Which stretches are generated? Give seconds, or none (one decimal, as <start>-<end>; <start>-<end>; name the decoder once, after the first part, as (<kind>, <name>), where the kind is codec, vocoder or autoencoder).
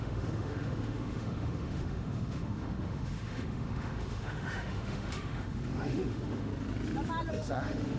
0.0-6.5 (autoencoder, DAC-VAE); 7.3-8.0